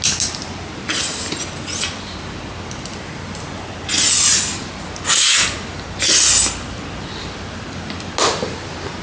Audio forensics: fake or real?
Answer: real